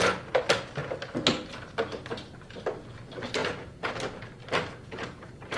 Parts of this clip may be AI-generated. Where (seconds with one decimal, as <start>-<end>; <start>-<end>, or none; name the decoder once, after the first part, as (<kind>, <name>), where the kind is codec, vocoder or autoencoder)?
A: 3.4-3.9 (vocoder, Vocos); 4.8-5.6